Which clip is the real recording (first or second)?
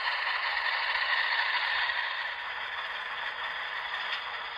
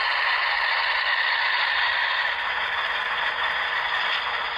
second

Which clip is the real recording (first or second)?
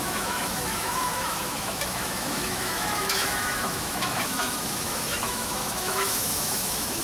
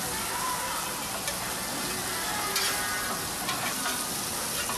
second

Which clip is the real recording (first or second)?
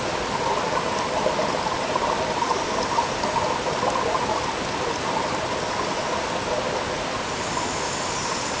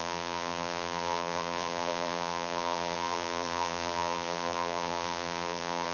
first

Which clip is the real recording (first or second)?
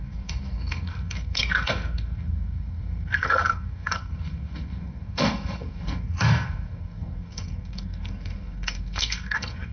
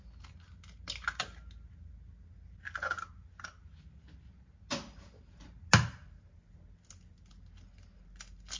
second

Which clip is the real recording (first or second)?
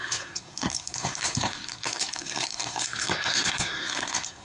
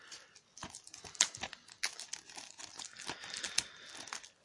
second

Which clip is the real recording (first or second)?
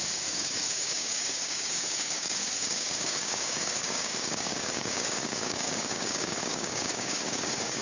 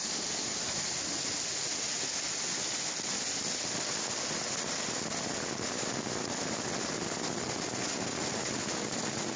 second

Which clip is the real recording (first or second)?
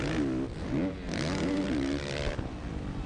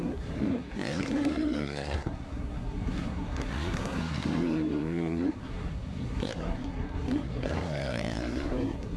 first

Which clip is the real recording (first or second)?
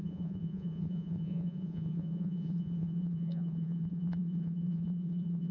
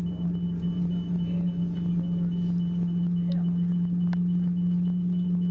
second